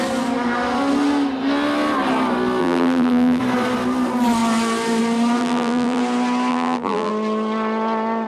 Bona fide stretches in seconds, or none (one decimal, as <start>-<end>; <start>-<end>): 0.0-2.6; 3.4-5.4; 6.0-6.5; 7.1-8.3